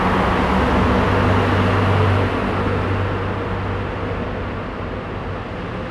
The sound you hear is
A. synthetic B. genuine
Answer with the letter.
B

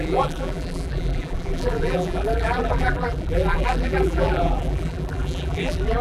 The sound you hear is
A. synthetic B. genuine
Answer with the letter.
A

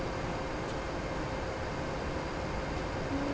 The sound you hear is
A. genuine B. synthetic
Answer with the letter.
A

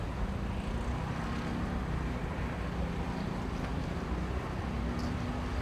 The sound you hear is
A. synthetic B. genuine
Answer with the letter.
B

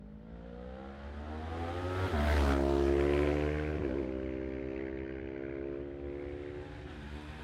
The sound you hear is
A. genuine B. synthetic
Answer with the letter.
A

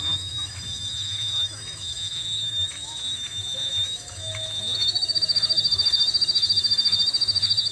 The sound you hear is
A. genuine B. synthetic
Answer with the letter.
B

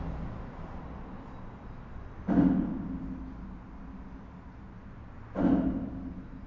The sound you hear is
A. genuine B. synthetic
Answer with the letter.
A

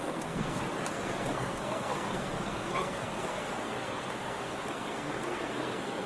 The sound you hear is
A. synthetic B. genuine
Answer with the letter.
A